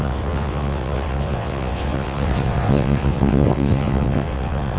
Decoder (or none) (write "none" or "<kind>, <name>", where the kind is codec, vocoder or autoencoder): vocoder, WaveNeXt